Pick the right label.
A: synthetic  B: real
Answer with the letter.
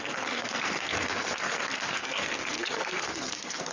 A